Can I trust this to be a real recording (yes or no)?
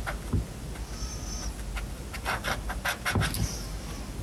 yes